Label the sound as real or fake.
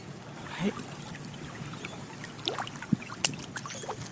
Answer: real